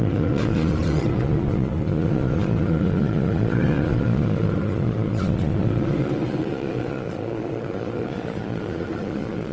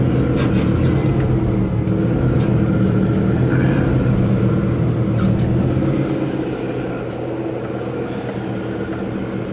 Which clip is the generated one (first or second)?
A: first